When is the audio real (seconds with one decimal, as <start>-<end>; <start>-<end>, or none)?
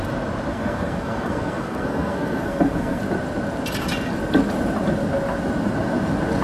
0.0-0.5; 3.0-6.4